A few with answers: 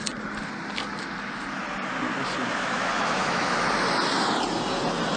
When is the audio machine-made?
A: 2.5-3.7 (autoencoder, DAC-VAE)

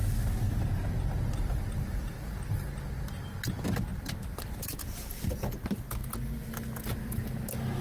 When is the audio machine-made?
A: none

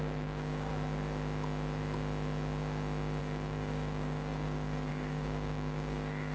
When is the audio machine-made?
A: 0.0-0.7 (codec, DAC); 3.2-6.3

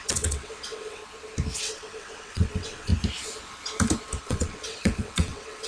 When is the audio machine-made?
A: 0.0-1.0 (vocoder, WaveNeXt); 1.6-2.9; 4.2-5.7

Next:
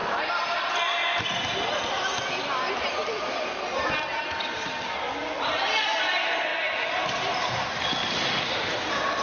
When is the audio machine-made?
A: 8.0-9.2 (vocoder, BigVGAN v2)

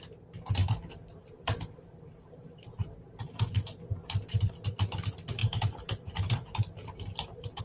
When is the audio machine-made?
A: 0.6-3.2 (vocoder, BigVGAN v2); 4.0-4.5; 5.4-7.6